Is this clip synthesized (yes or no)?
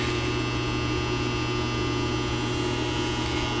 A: no